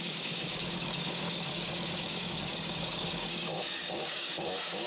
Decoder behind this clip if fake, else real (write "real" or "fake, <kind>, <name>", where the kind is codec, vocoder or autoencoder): fake, codec, DAC